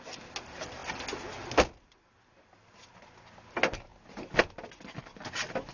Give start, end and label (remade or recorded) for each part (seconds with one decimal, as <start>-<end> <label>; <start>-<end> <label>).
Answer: 0.0-5.7 recorded